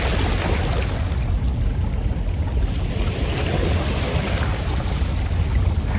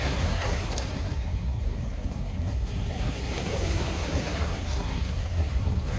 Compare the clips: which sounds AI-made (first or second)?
second